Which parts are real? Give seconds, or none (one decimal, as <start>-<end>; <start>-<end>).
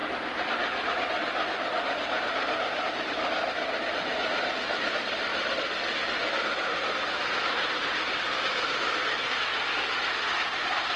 2.9-5.3; 9.4-11.0